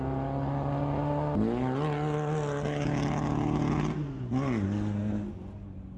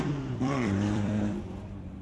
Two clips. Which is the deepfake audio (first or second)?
second